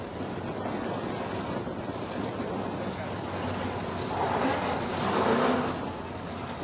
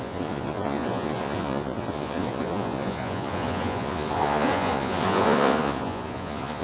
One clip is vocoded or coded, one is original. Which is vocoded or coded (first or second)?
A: second